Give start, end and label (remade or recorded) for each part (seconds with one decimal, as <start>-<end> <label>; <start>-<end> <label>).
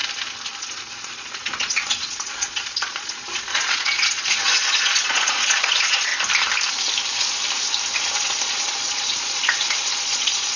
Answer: 0.0-0.6 recorded; 0.6-6.1 remade; 6.1-8.4 recorded; 8.4-10.6 remade